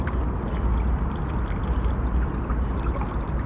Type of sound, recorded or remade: recorded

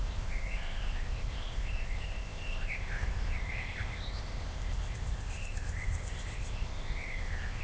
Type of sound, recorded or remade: remade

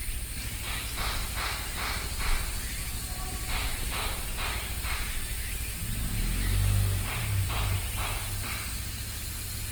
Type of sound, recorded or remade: recorded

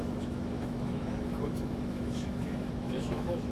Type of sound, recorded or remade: remade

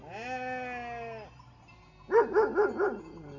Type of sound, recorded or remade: recorded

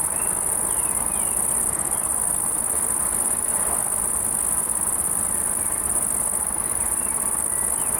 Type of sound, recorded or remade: recorded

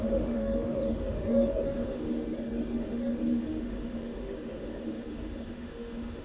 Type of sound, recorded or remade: remade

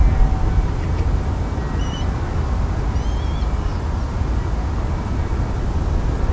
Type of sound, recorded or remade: recorded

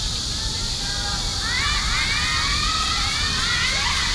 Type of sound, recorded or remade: recorded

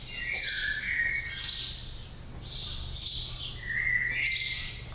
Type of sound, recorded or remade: recorded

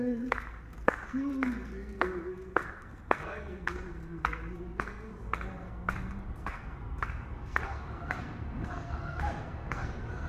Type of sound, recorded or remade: remade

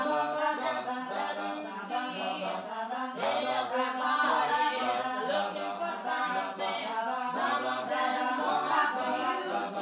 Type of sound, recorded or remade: recorded